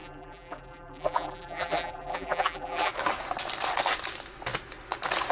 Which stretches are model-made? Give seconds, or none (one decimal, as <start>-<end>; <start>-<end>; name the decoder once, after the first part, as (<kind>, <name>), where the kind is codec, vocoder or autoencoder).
0.0-2.9 (vocoder, BigVGAN v2)